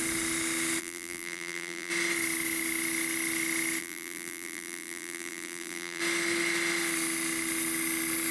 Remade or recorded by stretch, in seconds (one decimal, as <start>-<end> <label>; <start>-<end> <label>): 0.0-0.8 recorded; 0.8-1.9 remade; 1.9-3.8 recorded; 3.8-6.0 remade; 6.0-8.3 recorded